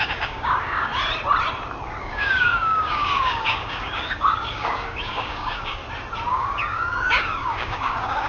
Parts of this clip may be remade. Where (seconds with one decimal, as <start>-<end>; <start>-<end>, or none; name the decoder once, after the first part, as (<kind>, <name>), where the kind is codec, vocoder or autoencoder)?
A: 0.0-0.9 (codec, DAC); 2.0-5.8; 6.3-8.3